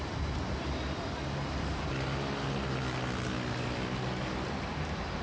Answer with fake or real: real